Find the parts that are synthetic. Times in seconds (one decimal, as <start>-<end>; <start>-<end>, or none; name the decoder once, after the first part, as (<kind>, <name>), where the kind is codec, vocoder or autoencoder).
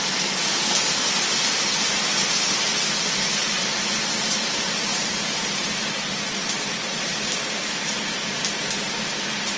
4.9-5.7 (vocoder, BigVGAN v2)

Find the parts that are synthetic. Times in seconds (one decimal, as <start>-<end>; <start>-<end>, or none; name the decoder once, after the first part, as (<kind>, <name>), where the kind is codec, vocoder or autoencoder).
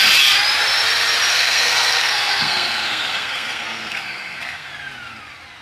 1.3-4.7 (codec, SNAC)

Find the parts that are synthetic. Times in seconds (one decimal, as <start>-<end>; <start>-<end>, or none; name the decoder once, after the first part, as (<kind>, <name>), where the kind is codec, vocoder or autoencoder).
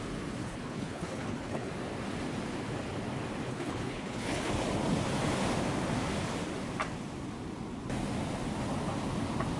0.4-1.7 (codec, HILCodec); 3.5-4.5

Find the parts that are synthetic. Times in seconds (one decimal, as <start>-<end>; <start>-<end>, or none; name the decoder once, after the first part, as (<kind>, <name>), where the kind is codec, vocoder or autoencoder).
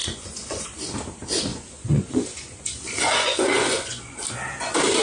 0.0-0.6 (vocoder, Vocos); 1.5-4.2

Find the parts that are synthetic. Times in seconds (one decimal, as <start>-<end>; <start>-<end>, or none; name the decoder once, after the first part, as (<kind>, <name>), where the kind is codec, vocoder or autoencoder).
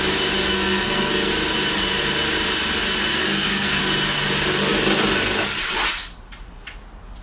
0.5-1.3 (codec, SNAC); 3.1-3.8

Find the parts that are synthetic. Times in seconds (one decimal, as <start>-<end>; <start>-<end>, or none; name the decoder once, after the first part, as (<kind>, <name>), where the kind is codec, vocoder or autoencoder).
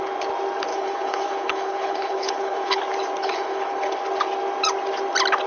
0.7-2.8 (codec, HILCodec); 3.2-4.0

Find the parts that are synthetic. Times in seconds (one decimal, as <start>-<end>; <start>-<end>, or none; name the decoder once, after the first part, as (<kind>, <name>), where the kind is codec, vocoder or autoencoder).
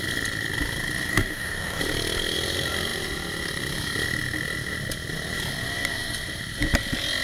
1.1-1.8 (codec, DAC)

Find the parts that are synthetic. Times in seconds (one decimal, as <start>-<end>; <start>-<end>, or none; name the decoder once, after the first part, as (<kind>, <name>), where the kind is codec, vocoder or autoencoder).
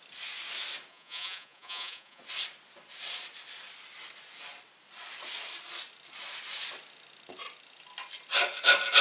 0.9-2.2 (vocoder, Vocos)